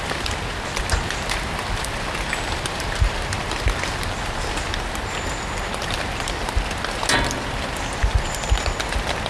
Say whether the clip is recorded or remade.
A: recorded